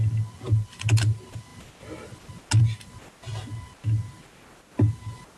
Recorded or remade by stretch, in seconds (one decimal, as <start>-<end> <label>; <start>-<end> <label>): 0.0-5.4 recorded